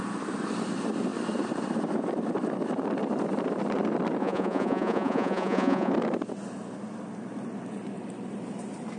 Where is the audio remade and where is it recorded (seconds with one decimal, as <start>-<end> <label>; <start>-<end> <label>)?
0.0-4.2 recorded; 4.2-5.9 remade; 5.9-9.0 recorded